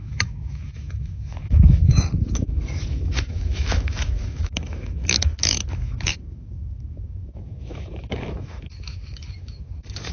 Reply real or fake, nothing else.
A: fake